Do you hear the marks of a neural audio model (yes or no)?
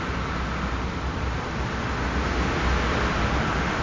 no